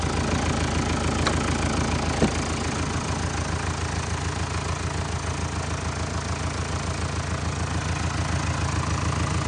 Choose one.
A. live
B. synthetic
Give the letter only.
A